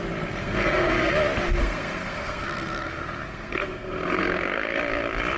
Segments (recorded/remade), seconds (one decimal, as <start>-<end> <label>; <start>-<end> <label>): 0.0-0.4 recorded; 0.4-1.1 remade; 1.1-1.6 recorded; 1.6-4.8 remade; 4.8-5.4 recorded